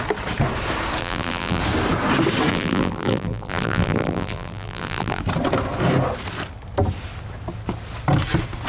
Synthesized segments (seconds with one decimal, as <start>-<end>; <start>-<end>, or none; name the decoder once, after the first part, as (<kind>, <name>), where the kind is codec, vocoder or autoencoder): 1.0-1.6 (vocoder, BigVGAN v2); 2.5-5.2